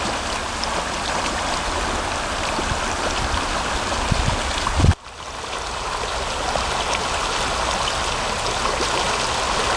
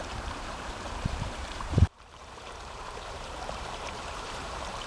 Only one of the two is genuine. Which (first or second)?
first